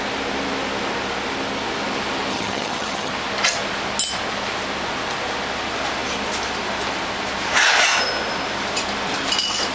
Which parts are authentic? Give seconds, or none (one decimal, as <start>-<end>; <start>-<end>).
0.0-2.3; 3.1-9.7